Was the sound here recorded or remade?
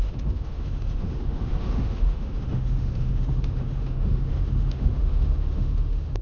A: remade